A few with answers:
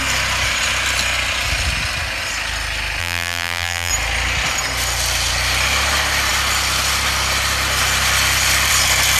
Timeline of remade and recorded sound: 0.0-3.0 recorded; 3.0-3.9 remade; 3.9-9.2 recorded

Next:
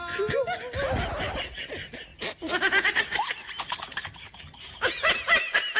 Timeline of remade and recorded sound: 0.0-2.1 recorded; 2.1-5.8 remade

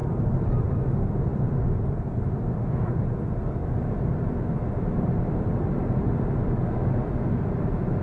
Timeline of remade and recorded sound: 0.0-0.6 remade; 0.6-1.3 recorded; 1.3-2.3 remade; 2.3-8.0 recorded

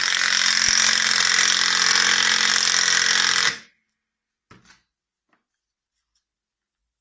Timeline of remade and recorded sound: 0.0-7.0 recorded

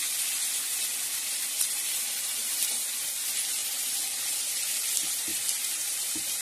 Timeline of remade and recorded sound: 0.0-0.9 recorded; 0.9-2.9 remade; 2.9-5.3 recorded; 5.3-6.4 remade

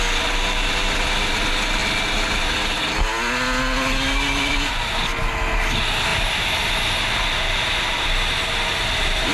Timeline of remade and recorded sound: 0.0-9.3 recorded